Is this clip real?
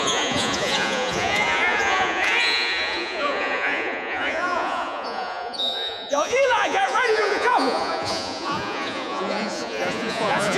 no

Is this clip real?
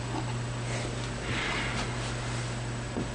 yes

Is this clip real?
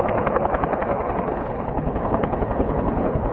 no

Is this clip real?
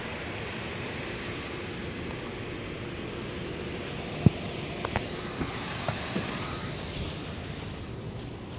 yes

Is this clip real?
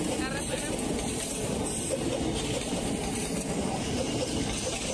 yes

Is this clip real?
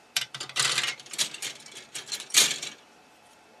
no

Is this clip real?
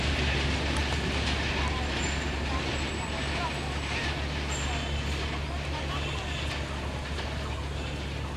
yes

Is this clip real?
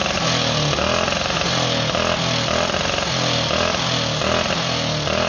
yes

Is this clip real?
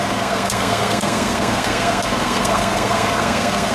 no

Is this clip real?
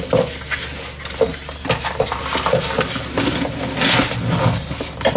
yes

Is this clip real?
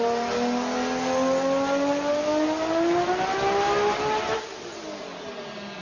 yes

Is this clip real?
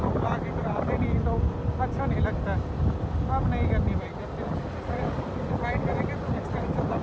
yes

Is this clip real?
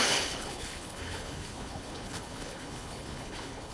no